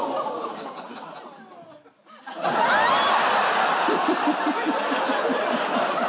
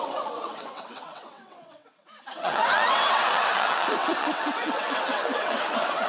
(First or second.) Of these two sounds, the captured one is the first